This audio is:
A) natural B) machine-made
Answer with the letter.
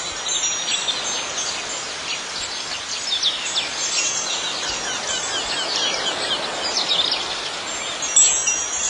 A